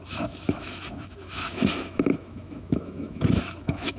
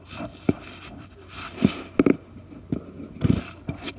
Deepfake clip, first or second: first